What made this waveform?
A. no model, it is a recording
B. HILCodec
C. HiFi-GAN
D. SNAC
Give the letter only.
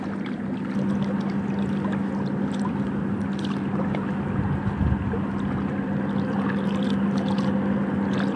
A